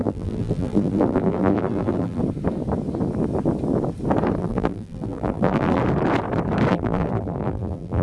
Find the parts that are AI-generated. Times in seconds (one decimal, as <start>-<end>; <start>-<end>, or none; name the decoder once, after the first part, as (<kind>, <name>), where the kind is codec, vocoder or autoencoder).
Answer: 0.0-2.2 (vocoder, BigVGAN v2); 4.4-5.8; 6.7-8.0